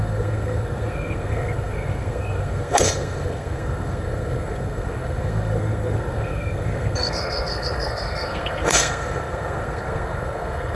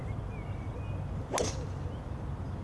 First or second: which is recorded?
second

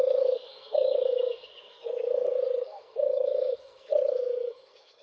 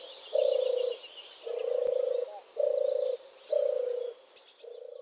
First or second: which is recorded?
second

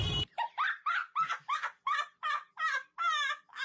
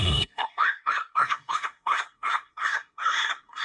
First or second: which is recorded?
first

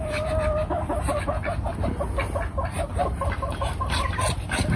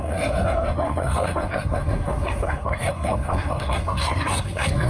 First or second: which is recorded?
first